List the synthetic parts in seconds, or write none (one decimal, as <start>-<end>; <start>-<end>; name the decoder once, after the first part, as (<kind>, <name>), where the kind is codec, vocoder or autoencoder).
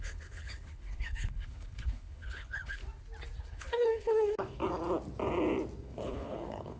0.0-2.8 (codec, HILCodec); 3.4-4.6; 5.8-6.8